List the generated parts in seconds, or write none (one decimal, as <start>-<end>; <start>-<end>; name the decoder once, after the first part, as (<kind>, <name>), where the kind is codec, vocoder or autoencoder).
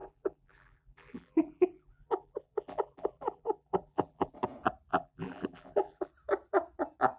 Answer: 0.0-4.3 (vocoder, BigVGAN v2); 4.9-6.1